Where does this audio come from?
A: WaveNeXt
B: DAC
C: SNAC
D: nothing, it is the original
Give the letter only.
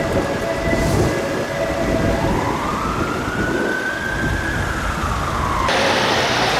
D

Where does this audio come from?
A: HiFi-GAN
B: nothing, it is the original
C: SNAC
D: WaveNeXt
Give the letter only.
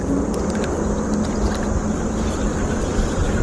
B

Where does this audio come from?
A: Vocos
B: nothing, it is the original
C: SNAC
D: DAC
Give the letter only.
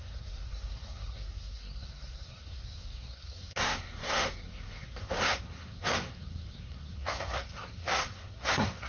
C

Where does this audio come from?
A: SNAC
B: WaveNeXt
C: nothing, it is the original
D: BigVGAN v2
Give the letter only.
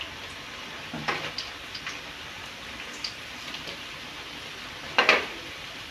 C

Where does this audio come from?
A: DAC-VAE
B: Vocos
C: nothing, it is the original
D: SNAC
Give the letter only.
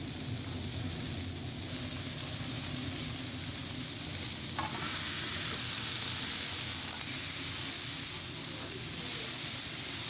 C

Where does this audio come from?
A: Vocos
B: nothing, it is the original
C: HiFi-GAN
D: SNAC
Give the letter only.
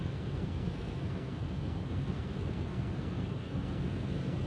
D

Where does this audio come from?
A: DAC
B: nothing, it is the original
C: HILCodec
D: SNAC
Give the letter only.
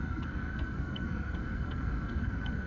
D